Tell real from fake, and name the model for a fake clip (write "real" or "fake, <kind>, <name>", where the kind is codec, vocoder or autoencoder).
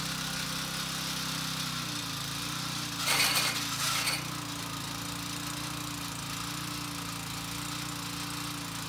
real